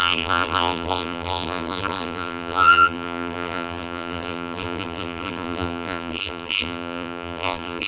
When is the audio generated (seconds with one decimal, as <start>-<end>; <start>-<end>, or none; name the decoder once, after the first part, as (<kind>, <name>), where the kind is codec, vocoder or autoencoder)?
0.0-7.9 (vocoder, BigVGAN v2)